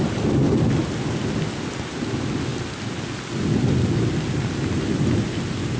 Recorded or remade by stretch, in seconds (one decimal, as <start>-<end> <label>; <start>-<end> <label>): 0.0-5.8 recorded